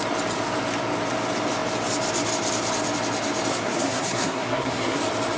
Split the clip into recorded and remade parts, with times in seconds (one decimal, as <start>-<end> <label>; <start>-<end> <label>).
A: 0.0-3.5 recorded; 3.5-5.0 remade; 5.0-5.4 recorded